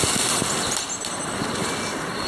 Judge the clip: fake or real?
real